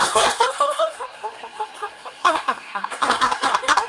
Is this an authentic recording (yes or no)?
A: no